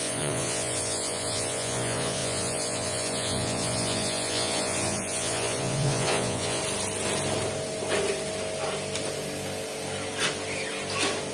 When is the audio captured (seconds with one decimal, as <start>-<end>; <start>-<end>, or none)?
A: 6.6-11.3